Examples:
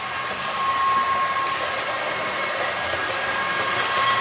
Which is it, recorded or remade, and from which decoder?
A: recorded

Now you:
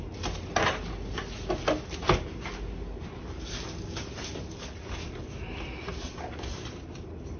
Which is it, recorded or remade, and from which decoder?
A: recorded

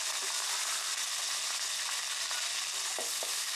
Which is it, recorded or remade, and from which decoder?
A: recorded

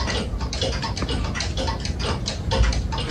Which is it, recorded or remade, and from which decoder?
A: recorded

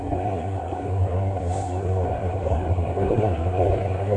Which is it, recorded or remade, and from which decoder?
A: remade, codec, SNAC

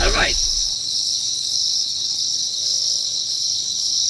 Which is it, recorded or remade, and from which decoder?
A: remade, codec, HILCodec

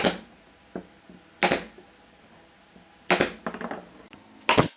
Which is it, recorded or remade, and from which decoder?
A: recorded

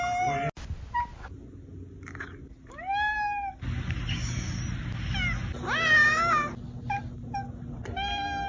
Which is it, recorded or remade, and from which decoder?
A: recorded